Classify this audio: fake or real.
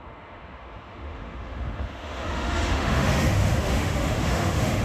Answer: fake